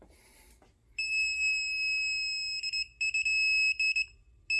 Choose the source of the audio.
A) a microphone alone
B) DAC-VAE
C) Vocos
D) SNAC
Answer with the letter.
A